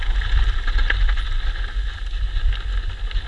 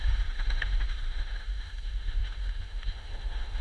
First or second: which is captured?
first